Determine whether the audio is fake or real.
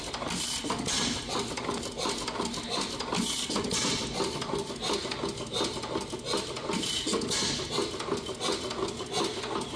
real